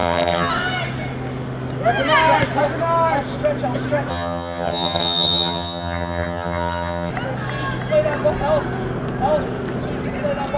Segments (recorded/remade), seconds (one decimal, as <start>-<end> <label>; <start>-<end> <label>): 0.0-0.5 remade; 0.5-4.1 recorded; 4.1-7.1 remade; 7.1-10.6 recorded